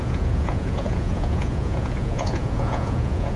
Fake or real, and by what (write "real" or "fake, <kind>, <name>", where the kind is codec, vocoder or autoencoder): fake, vocoder, Vocos